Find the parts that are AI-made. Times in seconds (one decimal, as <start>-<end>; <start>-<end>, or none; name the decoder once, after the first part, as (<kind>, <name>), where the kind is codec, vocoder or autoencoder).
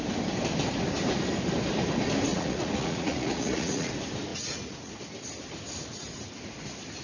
2.3-3.9 (vocoder, Vocos); 4.3-4.9